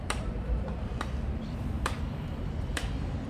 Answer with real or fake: fake